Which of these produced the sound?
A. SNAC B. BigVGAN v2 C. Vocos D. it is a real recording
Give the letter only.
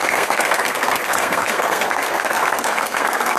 A